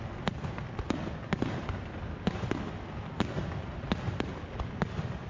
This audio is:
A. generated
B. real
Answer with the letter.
B